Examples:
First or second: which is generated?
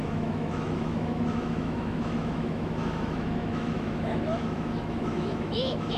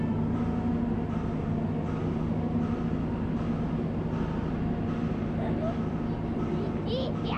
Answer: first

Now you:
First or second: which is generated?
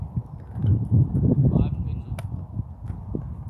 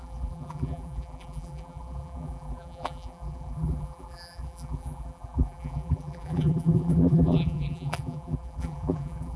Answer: second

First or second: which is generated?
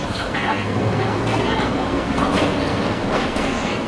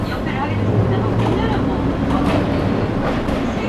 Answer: first